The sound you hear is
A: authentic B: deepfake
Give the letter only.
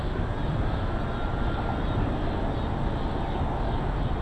A